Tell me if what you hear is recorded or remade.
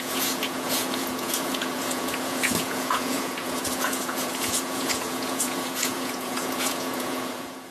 remade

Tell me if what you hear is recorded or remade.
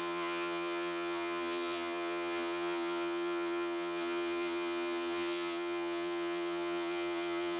remade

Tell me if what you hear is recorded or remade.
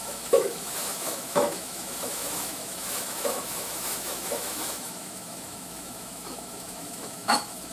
remade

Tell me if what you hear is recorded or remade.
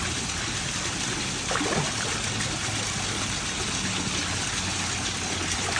recorded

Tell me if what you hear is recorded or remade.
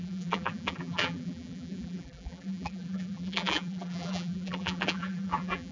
remade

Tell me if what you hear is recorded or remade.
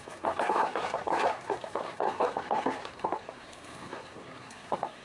remade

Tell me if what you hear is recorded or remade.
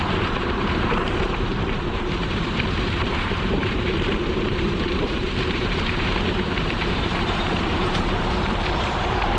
remade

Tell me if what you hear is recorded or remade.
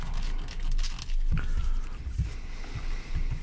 recorded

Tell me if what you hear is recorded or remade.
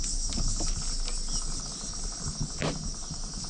recorded